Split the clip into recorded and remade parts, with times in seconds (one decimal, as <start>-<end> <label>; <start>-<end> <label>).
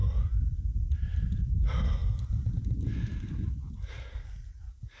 0.0-2.0 recorded; 2.0-2.6 remade; 2.6-5.0 recorded